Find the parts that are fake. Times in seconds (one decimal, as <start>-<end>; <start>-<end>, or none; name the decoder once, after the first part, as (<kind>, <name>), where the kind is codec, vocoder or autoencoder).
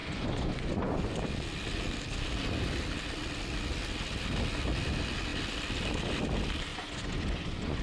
0.0-1.1 (vocoder, Vocos); 6.7-7.8